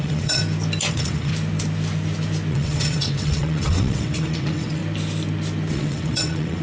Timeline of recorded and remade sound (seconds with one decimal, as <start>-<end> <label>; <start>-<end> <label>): 0.0-0.4 remade; 0.4-0.9 recorded; 0.9-1.3 remade; 1.3-2.5 recorded; 2.5-4.8 remade; 4.8-5.7 recorded; 5.7-6.6 remade